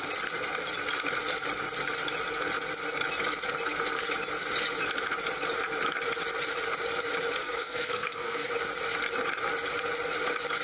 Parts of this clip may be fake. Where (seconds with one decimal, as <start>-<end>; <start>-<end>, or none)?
7.4-8.5